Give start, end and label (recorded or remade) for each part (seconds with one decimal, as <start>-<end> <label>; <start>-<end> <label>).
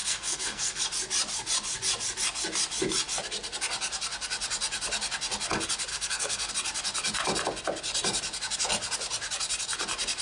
0.0-0.8 remade; 0.8-5.9 recorded; 5.9-6.5 remade; 6.5-10.2 recorded